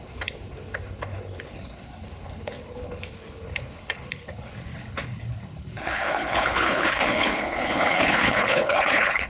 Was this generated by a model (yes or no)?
yes